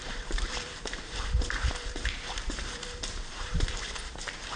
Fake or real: fake